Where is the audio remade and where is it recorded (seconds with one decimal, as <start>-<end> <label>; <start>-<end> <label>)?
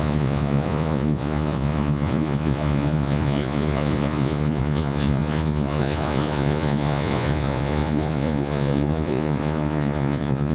0.0-10.5 remade